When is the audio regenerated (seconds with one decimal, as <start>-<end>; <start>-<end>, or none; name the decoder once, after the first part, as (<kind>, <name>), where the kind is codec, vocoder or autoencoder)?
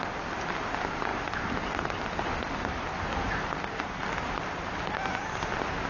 none